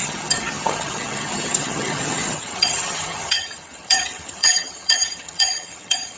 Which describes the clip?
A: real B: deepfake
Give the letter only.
B